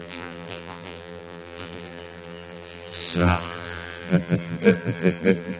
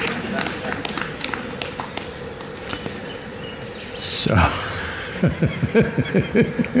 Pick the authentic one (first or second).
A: second